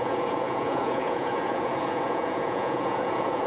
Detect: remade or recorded remade